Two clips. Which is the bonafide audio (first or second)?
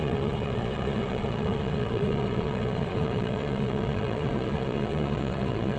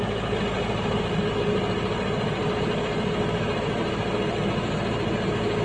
second